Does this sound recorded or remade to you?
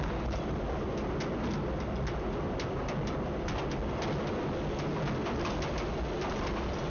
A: recorded